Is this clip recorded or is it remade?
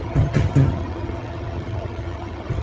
remade